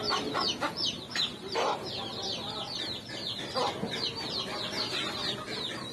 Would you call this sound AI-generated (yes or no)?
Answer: no